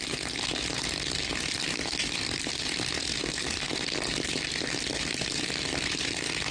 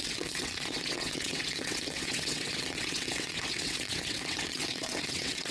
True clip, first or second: first